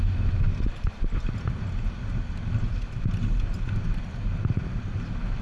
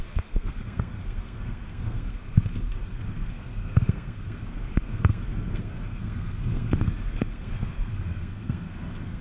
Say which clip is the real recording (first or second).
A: first